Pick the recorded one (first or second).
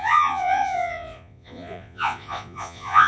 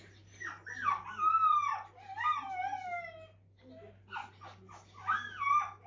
second